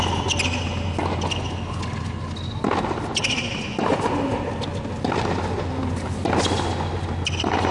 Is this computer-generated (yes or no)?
no